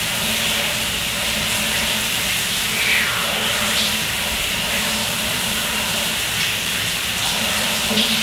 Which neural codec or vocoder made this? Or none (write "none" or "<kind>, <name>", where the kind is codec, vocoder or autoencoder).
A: vocoder, BigVGAN v2